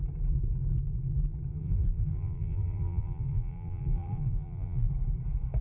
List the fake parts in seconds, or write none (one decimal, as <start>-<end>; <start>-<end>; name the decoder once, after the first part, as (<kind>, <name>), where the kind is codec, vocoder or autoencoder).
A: 1.5-4.9 (vocoder, BigVGAN v2)